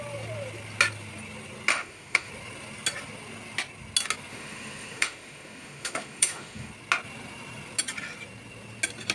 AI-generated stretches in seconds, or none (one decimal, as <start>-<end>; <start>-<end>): 1.7-2.3; 4.3-6.7